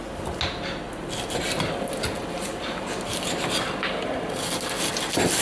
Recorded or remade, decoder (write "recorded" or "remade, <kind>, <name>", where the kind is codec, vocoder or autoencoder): recorded